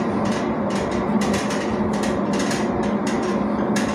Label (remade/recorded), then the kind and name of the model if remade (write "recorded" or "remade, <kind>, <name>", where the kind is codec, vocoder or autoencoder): recorded